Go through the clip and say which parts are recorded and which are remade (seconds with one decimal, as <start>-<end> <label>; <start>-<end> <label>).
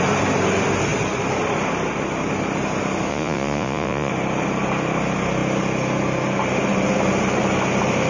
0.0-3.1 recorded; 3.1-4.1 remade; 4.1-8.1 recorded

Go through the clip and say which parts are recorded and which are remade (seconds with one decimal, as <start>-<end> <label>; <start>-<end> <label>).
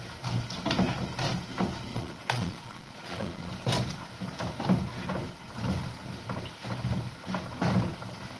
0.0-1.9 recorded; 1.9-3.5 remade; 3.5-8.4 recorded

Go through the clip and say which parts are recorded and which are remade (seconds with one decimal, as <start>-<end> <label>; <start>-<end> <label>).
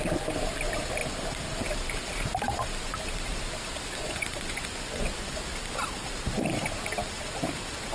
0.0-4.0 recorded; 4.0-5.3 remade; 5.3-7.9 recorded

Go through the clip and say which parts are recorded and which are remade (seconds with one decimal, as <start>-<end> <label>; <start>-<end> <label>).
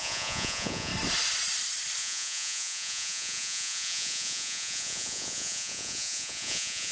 0.0-0.9 remade; 0.9-2.0 recorded; 2.0-6.9 remade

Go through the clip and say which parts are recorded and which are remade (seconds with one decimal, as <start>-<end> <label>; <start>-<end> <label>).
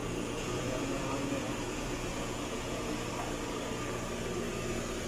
0.0-3.1 remade; 3.1-5.1 recorded